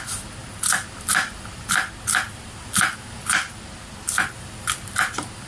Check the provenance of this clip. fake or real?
real